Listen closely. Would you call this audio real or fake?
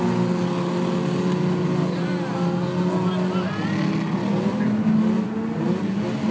real